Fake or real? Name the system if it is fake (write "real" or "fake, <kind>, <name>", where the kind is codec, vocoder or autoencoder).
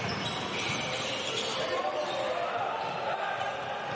real